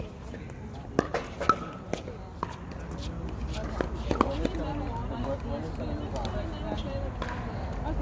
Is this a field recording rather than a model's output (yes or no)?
yes